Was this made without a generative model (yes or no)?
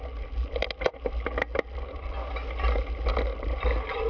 yes